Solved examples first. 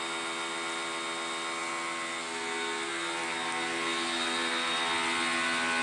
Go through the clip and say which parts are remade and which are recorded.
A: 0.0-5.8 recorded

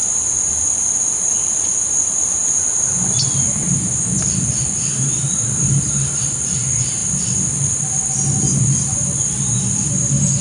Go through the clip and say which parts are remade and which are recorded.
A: 0.0-10.4 recorded

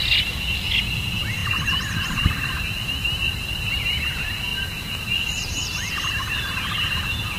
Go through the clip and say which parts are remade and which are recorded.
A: 0.0-1.4 recorded; 1.4-3.8 remade; 3.8-4.5 recorded; 4.5-6.1 remade; 6.1-7.4 recorded

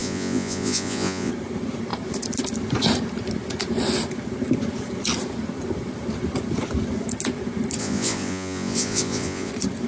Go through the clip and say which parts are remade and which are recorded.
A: 0.0-1.3 remade; 1.3-7.8 recorded; 7.8-9.5 remade; 9.5-9.9 recorded